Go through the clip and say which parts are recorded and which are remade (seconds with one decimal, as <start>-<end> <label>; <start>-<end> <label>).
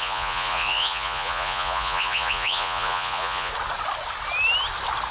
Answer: 0.0-3.5 remade; 3.5-5.1 recorded